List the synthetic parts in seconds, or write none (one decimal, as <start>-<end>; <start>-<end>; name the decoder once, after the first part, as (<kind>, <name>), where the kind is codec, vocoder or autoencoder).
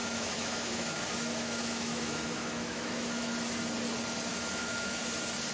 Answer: 0.0-3.3 (autoencoder, DAC-VAE); 4.3-5.0